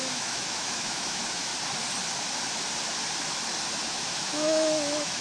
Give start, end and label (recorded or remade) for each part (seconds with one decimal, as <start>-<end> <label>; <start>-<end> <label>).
0.0-1.5 remade; 1.5-3.9 recorded; 3.9-5.2 remade